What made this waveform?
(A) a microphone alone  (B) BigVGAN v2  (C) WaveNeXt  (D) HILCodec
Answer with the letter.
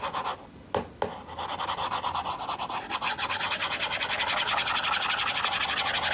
A